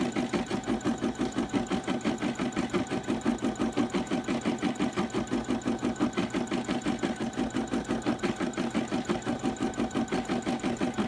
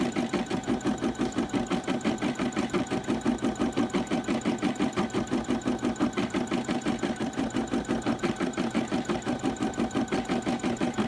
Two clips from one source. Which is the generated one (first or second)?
second